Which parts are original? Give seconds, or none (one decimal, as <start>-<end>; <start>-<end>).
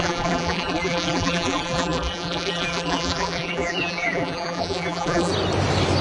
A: 5.3-6.0